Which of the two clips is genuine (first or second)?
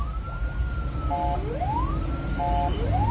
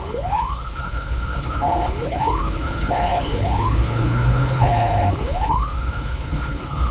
first